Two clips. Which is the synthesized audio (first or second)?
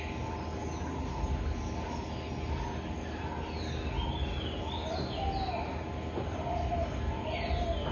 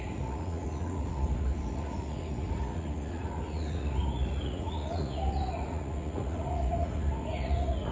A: second